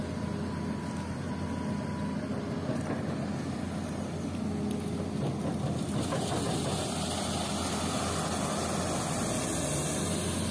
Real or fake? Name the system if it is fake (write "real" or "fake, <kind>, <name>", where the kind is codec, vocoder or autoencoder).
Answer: real